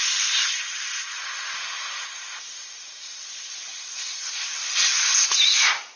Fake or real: real